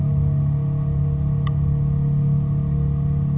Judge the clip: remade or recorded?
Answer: recorded